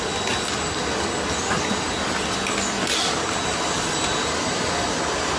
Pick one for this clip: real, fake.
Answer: real